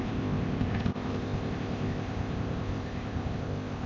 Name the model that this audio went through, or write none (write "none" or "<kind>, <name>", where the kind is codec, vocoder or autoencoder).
codec, ZipCodec